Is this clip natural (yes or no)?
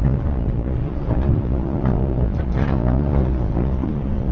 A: no